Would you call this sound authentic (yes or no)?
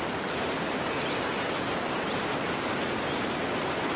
yes